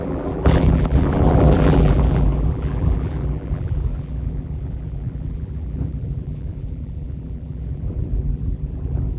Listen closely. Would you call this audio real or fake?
fake